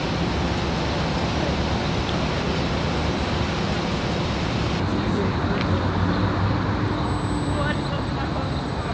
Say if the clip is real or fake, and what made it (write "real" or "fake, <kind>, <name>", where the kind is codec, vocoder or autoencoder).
real